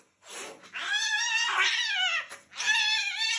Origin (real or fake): real